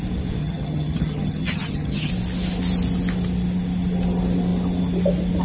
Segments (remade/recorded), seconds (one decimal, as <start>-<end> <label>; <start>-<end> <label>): 0.0-0.4 recorded; 0.4-2.1 remade; 2.1-5.4 recorded